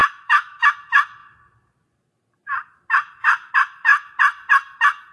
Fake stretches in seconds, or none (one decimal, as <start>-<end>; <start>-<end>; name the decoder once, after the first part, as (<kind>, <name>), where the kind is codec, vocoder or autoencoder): 0.0-0.7 (autoencoder, DAC-VAE)